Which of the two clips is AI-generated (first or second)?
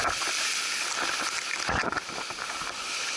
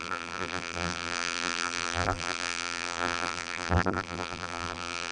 second